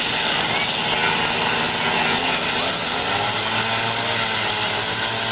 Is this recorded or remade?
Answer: recorded